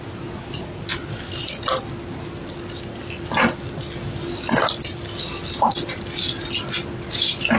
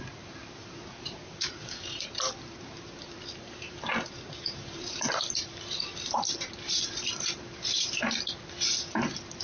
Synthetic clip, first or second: second